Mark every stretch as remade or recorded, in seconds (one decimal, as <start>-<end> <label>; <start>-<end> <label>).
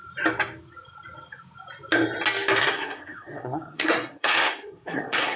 0.0-2.6 recorded; 2.6-5.4 remade